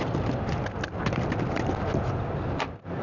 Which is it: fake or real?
real